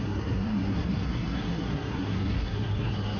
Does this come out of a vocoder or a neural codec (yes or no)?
yes